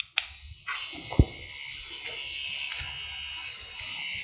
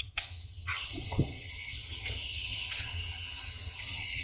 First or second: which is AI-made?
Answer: second